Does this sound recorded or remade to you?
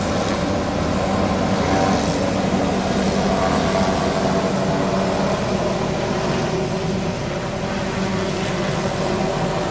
recorded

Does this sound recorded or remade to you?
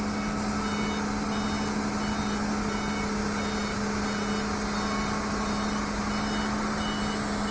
recorded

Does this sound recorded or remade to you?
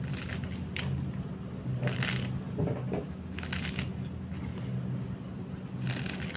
recorded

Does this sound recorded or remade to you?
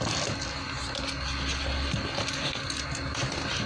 recorded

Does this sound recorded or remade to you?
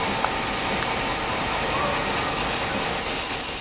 recorded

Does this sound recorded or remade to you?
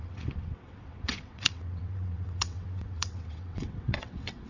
remade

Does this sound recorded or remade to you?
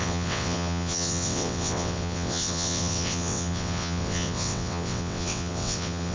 remade